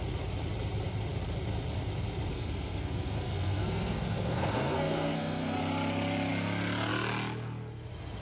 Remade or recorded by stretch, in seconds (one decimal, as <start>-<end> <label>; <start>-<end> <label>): 0.0-2.3 recorded; 2.3-5.6 remade; 5.6-8.2 recorded